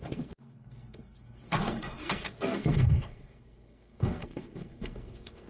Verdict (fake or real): fake